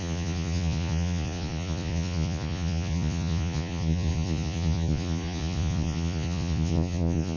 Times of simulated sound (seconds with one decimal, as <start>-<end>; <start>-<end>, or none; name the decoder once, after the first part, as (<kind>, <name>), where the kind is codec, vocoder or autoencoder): 0.0-7.4 (vocoder, Vocos)